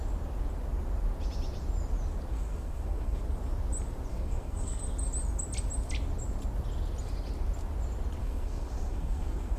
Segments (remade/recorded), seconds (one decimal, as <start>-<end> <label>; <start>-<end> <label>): 0.0-2.3 recorded; 2.3-3.2 remade; 3.2-4.1 recorded; 4.1-4.8 remade; 4.8-8.2 recorded; 8.2-9.6 remade